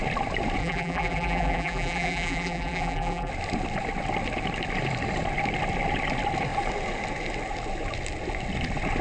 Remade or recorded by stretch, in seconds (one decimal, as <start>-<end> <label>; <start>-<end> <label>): 0.0-0.6 recorded; 0.6-3.3 remade; 3.3-9.0 recorded